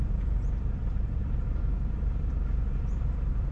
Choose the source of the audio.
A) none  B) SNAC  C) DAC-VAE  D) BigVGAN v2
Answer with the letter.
D